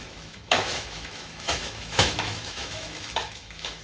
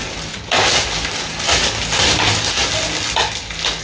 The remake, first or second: first